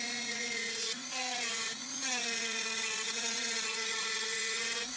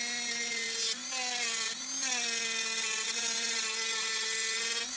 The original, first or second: second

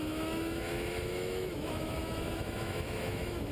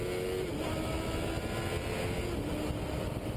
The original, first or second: second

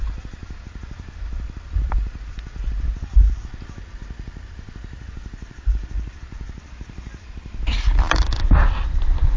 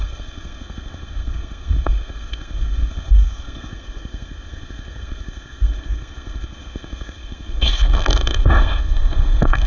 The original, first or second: first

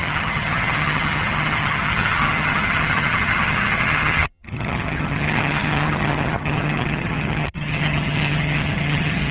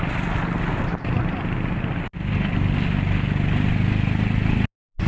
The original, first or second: second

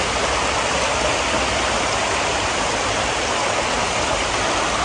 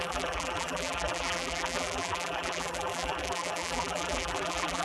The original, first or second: first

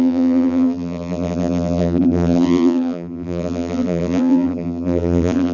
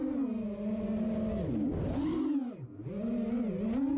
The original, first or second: second